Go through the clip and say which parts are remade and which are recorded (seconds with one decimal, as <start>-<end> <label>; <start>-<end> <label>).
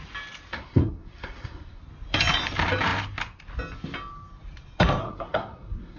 0.0-0.5 recorded; 0.5-1.8 remade; 1.8-5.0 recorded; 5.0-6.0 remade